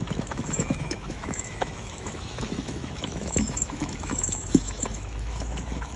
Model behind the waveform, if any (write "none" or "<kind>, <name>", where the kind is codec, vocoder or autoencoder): autoencoder, DAC-VAE